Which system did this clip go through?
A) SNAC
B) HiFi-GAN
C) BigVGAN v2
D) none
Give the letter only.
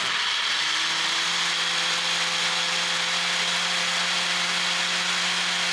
D